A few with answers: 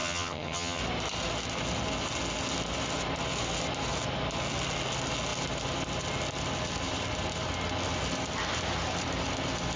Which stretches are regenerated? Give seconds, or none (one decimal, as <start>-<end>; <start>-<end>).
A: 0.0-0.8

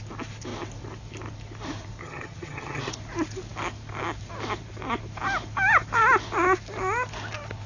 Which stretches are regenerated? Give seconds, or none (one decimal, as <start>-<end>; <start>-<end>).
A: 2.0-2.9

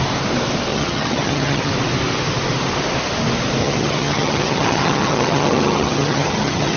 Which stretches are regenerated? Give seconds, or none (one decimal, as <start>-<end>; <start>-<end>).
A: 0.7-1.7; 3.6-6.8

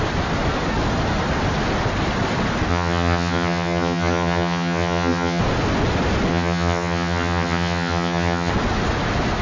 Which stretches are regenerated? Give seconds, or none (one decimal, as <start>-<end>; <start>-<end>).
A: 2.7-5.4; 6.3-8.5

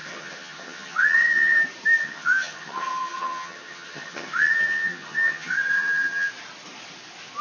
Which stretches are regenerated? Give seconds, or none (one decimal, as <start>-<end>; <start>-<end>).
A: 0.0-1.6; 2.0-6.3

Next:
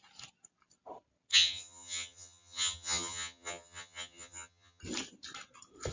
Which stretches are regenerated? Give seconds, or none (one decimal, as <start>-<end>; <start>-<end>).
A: 1.3-4.8

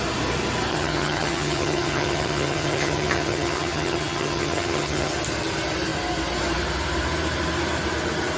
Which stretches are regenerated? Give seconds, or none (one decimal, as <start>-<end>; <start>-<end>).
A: 0.7-5.1